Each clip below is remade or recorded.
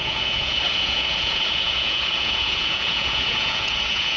remade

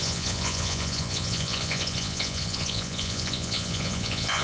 remade